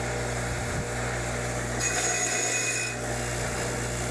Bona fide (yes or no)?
yes